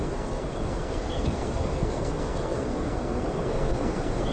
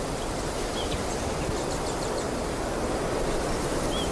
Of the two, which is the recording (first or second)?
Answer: second